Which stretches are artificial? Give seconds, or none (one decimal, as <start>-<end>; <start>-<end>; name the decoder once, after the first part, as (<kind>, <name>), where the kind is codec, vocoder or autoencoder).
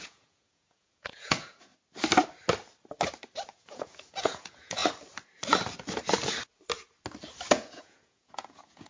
0.0-1.7 (vocoder, Vocos); 3.5-4.8; 7.5-8.9